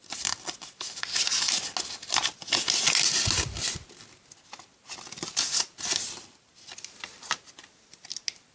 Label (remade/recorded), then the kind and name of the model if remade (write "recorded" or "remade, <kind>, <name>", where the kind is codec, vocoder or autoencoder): recorded